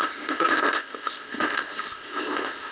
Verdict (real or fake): fake